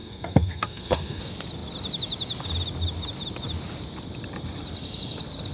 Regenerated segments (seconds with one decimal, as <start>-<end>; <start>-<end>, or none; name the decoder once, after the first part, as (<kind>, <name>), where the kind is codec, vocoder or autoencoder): 0.0-1.2 (codec, SNAC)